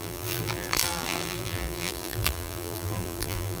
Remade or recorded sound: remade